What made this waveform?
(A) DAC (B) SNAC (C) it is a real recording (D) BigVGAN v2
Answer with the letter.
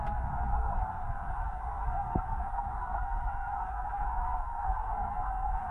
B